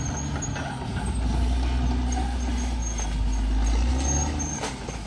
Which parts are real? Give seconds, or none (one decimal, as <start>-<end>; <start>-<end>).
0.0-5.1

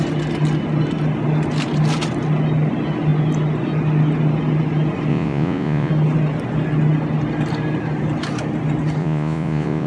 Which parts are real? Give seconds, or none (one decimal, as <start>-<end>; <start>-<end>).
0.0-5.1; 5.9-9.0

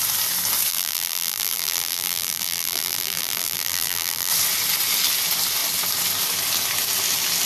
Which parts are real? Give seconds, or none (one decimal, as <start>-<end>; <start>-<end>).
0.0-0.7; 4.3-7.5